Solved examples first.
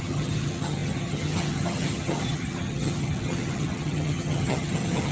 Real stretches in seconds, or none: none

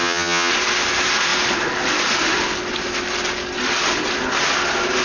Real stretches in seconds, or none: 0.5-5.0

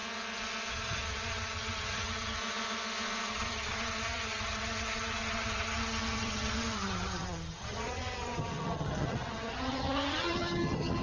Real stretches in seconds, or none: 0.0-0.7; 2.4-3.3